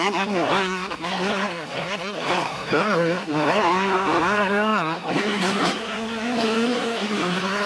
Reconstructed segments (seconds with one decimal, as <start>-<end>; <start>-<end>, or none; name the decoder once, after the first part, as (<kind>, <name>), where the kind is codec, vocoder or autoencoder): 0.0-7.7 (codec, SNAC)